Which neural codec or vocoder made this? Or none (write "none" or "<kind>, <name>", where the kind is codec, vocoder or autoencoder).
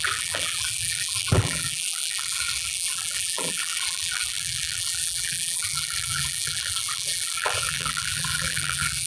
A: vocoder, BigVGAN v2